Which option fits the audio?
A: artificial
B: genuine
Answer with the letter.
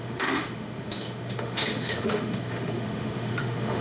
A